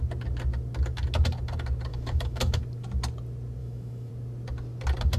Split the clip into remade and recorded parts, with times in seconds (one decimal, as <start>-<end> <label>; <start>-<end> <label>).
0.0-1.9 recorded; 1.9-2.6 remade; 2.6-3.6 recorded; 3.6-4.1 remade; 4.1-5.2 recorded